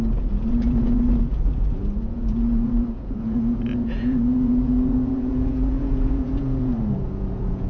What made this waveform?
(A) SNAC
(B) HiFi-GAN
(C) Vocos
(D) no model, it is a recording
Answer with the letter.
C